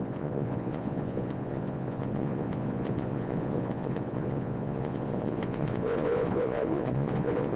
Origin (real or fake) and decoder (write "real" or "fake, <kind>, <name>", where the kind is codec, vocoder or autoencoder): fake, vocoder, Vocos